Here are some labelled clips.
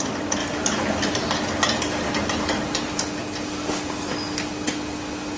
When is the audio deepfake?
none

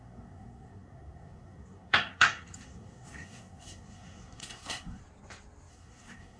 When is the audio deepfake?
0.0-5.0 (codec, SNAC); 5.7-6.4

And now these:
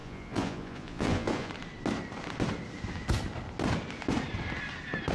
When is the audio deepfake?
0.0-1.5 (vocoder, Vocos)

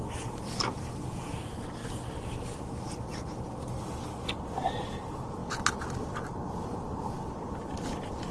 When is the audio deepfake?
5.4-7.7 (vocoder, BigVGAN v2)

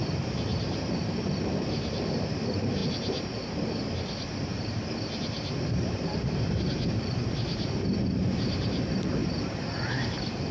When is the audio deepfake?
0.0-10.5 (vocoder, BigVGAN v2)